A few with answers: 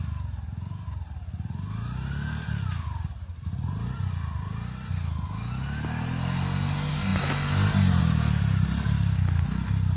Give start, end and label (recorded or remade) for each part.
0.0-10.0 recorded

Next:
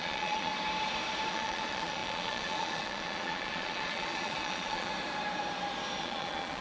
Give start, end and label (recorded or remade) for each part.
0.0-0.5 remade; 0.5-1.3 recorded; 1.3-4.9 remade; 4.9-6.0 recorded; 6.0-6.6 remade

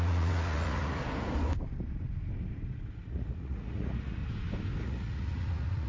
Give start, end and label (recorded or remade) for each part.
0.0-1.0 remade; 1.0-3.0 recorded; 3.0-4.2 remade; 4.2-4.8 recorded; 4.8-5.9 remade